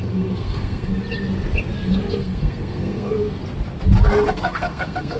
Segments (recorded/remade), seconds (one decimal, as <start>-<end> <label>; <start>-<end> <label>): 0.0-0.9 remade; 0.9-1.9 recorded; 1.9-3.4 remade; 3.4-4.3 recorded; 4.3-5.2 remade